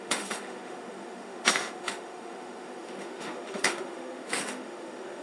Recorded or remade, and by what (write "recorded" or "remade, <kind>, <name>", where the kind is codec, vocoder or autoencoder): remade, autoencoder, DAC-VAE